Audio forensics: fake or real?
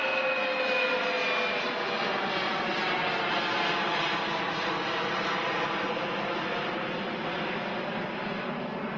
real